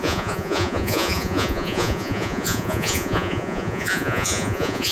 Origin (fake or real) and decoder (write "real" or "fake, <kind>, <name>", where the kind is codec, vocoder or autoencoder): fake, vocoder, Vocos